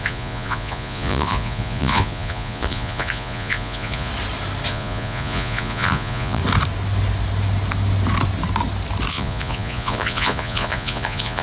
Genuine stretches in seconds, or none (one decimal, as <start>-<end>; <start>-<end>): 4.1-4.7; 6.4-9.1

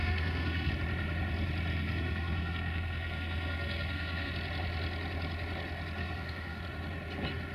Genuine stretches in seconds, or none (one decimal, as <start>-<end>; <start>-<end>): 0.7-1.7; 4.3-6.0; 6.6-7.5

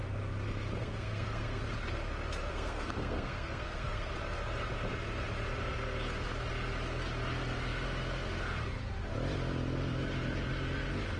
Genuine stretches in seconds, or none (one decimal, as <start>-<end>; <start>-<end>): 0.0-0.8; 1.6-2.5; 4.1-11.2

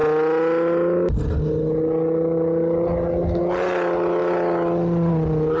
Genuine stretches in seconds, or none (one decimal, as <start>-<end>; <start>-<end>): 0.0-5.6